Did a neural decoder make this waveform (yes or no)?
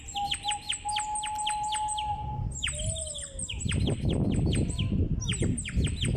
no